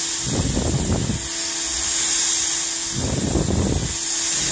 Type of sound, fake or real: real